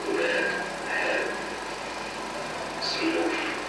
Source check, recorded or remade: recorded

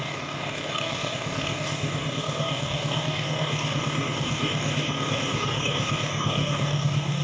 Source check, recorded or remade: remade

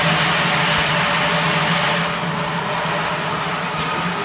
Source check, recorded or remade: recorded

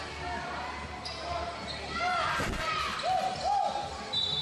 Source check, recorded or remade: recorded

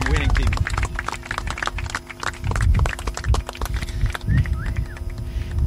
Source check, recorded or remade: recorded